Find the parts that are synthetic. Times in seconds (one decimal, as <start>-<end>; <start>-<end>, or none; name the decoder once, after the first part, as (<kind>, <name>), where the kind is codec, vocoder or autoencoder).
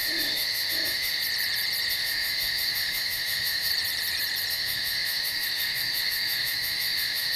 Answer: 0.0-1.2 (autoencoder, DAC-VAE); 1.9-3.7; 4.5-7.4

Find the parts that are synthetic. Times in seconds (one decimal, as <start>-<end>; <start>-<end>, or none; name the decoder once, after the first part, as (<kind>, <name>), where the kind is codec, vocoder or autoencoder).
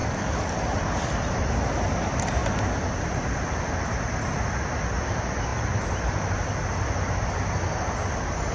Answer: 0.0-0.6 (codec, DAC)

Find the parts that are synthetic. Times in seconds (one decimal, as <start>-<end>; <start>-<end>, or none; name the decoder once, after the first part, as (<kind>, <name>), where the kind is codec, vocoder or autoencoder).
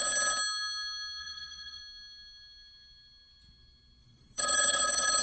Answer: 1.2-1.8 (vocoder, Vocos); 4.0-5.2